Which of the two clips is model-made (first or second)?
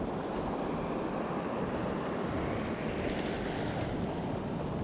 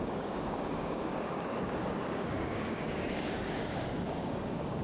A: second